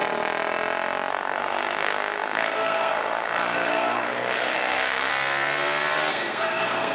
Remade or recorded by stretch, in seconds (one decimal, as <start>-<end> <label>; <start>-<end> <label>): 0.0-1.1 recorded; 1.1-5.1 remade; 5.1-6.1 recorded; 6.1-6.9 remade